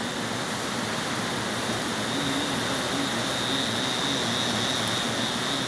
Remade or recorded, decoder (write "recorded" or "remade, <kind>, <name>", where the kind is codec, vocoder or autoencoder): recorded